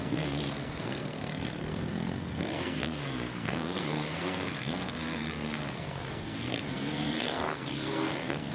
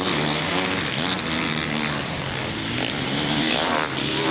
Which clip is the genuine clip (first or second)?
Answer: second